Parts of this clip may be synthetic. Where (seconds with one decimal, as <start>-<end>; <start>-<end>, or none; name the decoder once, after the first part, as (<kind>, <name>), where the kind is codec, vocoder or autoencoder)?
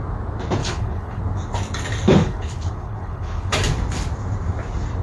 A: 0.6-1.2 (codec, HILCodec); 2.2-3.5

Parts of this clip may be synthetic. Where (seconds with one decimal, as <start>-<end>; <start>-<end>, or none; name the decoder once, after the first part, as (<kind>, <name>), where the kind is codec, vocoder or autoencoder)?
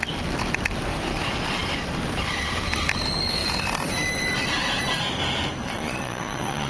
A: 5.6-6.7 (vocoder, Vocos)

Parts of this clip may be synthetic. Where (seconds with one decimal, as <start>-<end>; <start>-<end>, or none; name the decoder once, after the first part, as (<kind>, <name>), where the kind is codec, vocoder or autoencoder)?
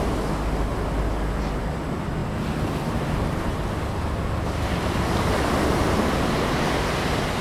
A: none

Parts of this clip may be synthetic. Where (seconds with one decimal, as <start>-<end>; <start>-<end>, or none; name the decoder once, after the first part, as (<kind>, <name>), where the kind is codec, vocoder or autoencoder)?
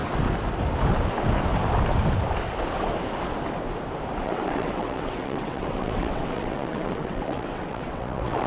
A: 4.2-8.5 (vocoder, WaveNeXt)